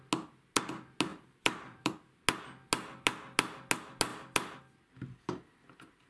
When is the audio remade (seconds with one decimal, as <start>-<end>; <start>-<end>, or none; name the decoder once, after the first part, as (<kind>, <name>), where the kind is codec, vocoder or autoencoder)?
1.1-1.9 (vocoder, BigVGAN v2)